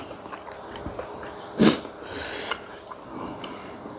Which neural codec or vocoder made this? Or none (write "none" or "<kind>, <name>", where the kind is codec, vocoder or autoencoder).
none